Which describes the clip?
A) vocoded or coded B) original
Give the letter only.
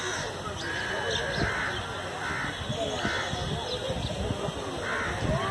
B